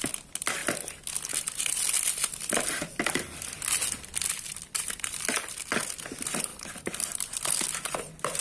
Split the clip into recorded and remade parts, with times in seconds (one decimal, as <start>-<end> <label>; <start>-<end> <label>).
0.0-4.6 recorded; 4.6-5.9 remade; 5.9-6.5 recorded; 6.5-8.4 remade